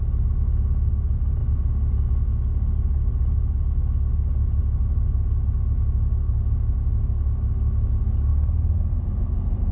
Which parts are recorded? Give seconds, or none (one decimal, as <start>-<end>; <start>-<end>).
0.0-9.7